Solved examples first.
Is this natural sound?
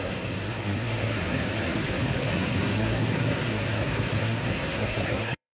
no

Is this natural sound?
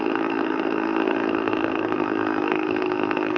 no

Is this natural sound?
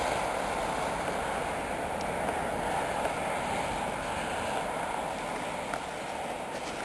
yes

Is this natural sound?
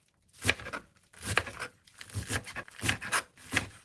yes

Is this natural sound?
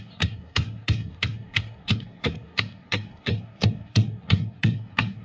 no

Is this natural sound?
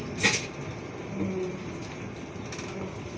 yes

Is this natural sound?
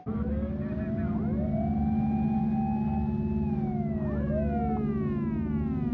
yes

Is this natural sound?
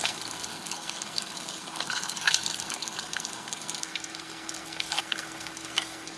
no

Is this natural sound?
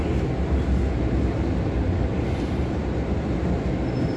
yes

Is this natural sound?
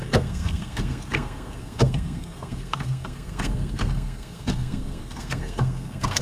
no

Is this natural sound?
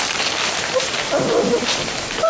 yes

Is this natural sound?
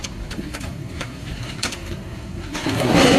no